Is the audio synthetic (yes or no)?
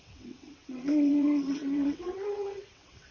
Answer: yes